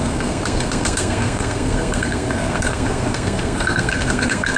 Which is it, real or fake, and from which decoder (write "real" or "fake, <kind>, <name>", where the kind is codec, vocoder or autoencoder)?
fake, codec, SNAC